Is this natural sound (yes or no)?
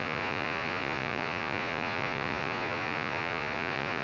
no